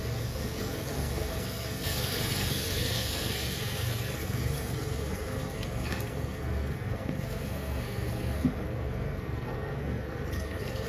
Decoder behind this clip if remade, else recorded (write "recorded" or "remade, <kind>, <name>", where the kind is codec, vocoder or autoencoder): remade, codec, SNAC